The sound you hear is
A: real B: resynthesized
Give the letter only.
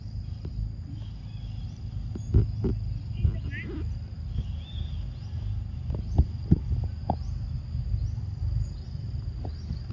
A